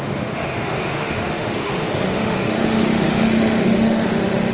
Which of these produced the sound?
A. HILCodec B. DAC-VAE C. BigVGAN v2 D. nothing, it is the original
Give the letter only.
B